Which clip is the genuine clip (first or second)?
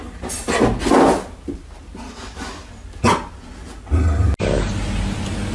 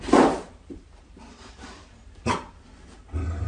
first